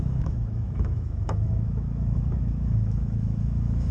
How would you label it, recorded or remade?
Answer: remade